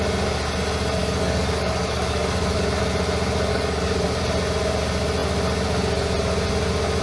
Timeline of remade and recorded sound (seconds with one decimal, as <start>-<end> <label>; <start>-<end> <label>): 0.0-1.0 recorded; 1.0-2.6 remade; 2.6-3.5 recorded; 3.5-4.2 remade; 4.2-7.0 recorded